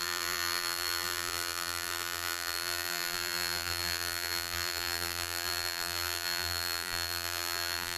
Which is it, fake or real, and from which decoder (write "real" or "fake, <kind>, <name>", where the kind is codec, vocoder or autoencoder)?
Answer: fake, vocoder, BigVGAN v2